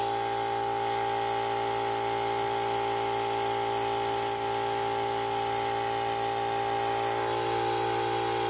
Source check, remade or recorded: recorded